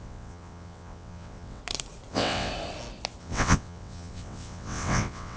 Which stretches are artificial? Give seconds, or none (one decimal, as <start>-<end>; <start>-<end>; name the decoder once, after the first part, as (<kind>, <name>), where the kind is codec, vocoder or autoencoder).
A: 0.0-1.6 (vocoder, WaveNeXt); 2.1-2.5; 3.2-5.4

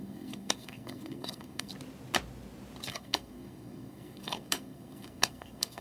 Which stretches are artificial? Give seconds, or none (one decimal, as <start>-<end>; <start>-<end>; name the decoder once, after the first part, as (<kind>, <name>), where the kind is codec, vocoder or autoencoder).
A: 0.0-1.7 (codec, SNAC); 2.9-5.8

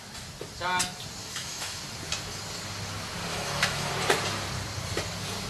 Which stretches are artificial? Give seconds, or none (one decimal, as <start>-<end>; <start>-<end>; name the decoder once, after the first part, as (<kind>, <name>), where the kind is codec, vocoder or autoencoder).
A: 1.2-1.8 (autoencoder, DAC-VAE); 3.3-3.9